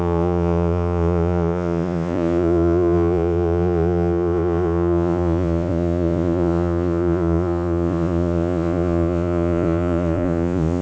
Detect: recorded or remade remade